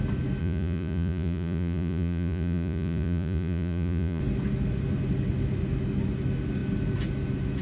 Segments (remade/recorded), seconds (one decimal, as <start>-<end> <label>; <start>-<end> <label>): 0.0-0.4 recorded; 0.4-4.2 remade; 4.2-7.6 recorded